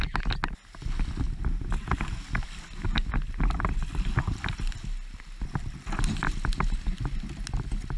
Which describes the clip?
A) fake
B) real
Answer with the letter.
B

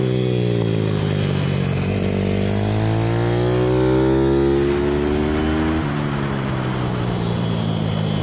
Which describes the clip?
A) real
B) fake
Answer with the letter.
A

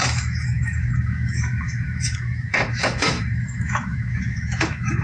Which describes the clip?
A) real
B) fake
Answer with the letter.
B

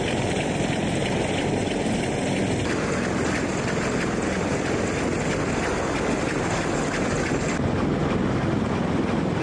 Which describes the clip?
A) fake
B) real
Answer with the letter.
B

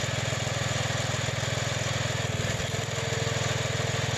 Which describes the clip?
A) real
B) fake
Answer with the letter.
A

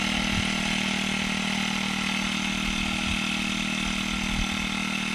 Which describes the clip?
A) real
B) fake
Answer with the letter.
A